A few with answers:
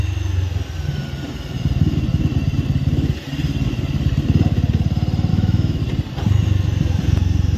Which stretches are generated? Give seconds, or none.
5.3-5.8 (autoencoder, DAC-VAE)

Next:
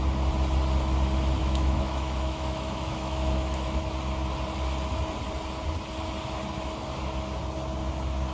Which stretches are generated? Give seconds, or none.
1.4-3.8 (autoencoder, DAC-VAE)

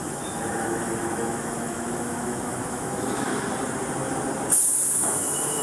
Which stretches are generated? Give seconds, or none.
0.0-3.3 (autoencoder, DAC-VAE); 4.6-5.6